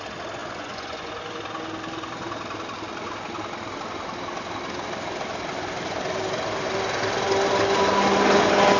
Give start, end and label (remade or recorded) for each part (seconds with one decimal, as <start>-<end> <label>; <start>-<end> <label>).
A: 0.0-0.4 recorded; 0.4-1.1 remade; 1.1-8.8 recorded

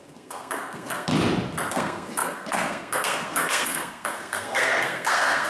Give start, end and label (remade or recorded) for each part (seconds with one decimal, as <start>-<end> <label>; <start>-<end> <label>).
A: 0.0-1.1 remade; 1.1-1.7 recorded; 1.7-5.5 remade

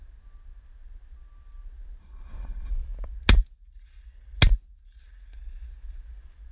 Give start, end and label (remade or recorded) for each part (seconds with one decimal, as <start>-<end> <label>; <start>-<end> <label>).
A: 0.0-2.0 recorded; 2.0-2.7 remade; 2.7-6.5 recorded

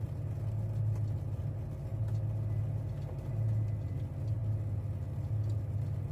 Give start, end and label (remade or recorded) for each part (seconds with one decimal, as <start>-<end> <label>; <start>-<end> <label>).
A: 0.0-6.1 recorded

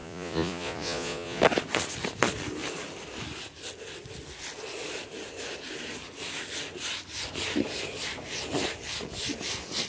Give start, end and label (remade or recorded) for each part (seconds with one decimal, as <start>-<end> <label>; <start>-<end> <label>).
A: 0.0-1.4 remade; 1.4-9.9 recorded

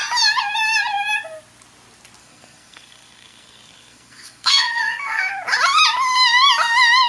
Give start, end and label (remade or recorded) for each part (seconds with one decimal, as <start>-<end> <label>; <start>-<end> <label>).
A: 0.0-2.2 recorded; 2.2-5.3 remade; 5.3-7.1 recorded

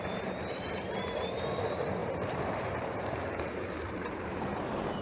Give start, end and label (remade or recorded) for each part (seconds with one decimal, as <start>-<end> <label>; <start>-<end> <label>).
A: 0.0-5.0 remade

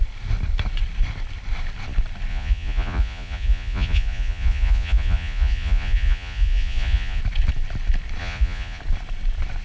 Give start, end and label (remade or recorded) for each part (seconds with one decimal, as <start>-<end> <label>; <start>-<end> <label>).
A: 0.0-2.3 recorded; 2.3-7.2 remade; 7.2-8.2 recorded; 8.2-8.8 remade; 8.8-9.6 recorded